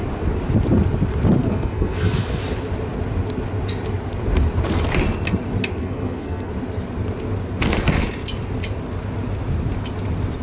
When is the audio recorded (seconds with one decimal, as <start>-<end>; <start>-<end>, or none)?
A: 0.0-1.4; 2.4-5.8; 6.5-10.4